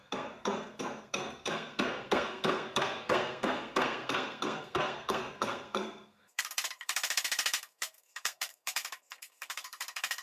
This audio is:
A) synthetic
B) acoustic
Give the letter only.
A